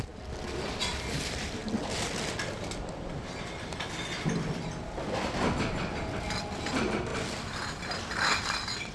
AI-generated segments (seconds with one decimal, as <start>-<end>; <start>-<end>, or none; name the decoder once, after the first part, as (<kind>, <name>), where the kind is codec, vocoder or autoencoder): 0.0-1.6 (vocoder, BigVGAN v2); 6.5-8.9